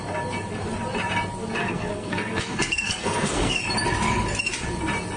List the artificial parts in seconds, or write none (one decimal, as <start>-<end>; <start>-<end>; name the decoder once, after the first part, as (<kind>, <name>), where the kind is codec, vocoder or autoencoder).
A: 1.6-3.6 (codec, SNAC)